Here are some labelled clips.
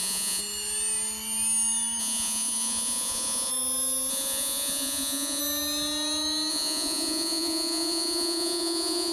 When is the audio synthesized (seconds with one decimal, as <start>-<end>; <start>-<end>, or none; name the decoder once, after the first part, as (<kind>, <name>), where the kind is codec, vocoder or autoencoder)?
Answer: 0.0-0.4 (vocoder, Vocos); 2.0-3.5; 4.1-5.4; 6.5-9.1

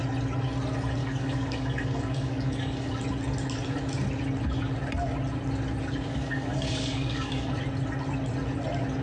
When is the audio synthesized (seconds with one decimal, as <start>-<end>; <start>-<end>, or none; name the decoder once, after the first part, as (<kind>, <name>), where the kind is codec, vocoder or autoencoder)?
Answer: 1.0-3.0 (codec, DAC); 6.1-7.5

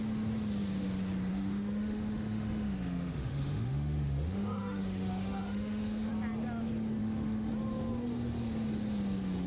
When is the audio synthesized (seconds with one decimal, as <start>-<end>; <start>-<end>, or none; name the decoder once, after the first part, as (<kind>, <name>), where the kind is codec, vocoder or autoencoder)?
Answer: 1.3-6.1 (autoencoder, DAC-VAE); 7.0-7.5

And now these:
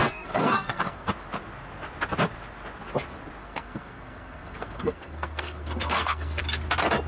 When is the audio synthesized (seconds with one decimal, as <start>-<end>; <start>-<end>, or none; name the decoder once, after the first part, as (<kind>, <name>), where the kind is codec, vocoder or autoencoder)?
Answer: 0.0-1.1 (codec, SNAC); 3.4-6.4